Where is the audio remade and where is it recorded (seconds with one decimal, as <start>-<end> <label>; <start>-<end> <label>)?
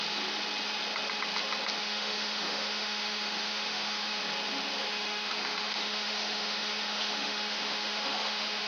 0.0-1.8 recorded; 1.8-4.2 remade; 4.2-4.8 recorded; 4.8-8.7 remade